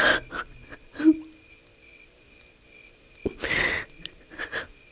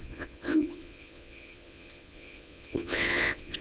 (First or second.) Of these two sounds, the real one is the first